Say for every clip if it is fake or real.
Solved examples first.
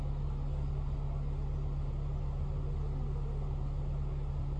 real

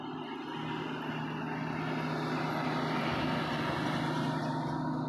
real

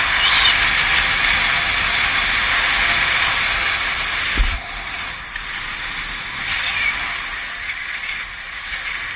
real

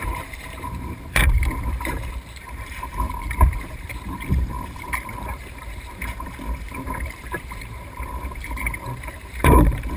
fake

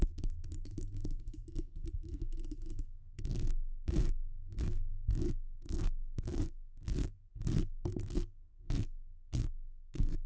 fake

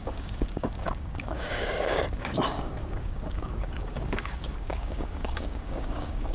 fake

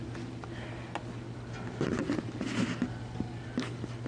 real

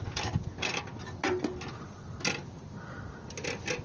real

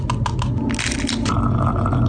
real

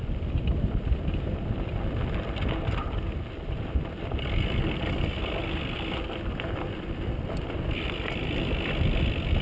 real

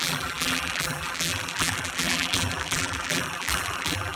fake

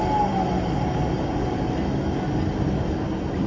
real